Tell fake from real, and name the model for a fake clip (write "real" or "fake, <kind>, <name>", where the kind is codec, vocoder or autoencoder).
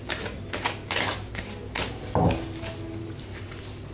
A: real